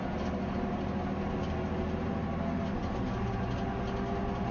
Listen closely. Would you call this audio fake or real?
real